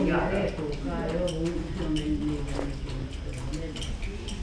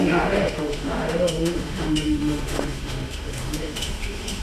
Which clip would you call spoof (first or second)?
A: second